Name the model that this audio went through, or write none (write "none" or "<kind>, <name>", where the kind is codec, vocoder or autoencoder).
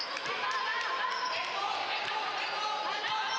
vocoder, BigVGAN v2